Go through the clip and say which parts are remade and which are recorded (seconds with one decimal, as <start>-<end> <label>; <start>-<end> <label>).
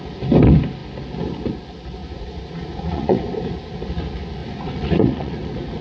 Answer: 0.0-2.0 recorded; 2.0-3.3 remade; 3.3-4.4 recorded; 4.4-5.8 remade